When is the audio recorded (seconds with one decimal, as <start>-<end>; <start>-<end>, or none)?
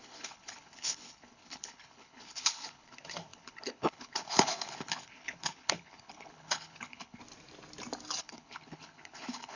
7.2-8.2